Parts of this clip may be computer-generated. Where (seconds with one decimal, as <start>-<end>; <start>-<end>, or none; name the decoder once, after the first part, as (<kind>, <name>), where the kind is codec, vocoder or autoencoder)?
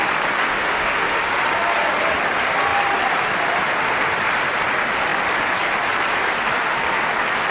0.5-1.3 (autoencoder, DAC-VAE)